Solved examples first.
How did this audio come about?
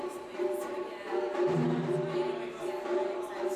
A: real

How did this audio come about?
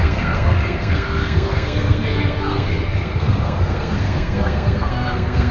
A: fake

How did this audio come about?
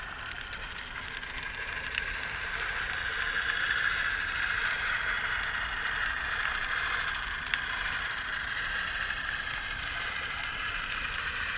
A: real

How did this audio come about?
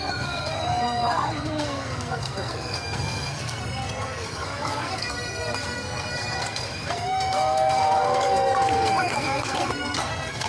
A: fake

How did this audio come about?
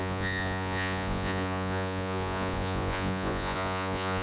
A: fake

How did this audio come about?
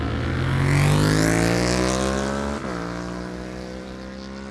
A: real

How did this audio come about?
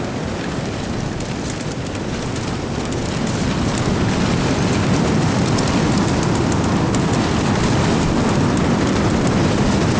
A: real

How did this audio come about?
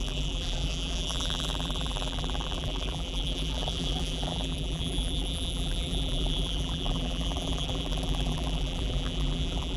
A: fake